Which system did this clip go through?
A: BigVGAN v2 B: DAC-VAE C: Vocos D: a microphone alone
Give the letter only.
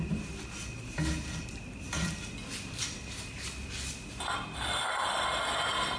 D